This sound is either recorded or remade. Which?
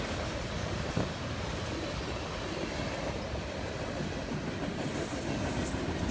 recorded